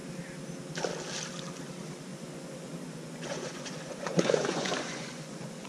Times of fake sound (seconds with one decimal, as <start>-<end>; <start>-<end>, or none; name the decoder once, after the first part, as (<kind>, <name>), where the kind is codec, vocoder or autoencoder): 2.1-5.7 (vocoder, Vocos)